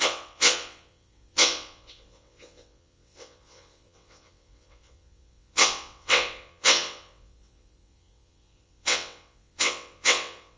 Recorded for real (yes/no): no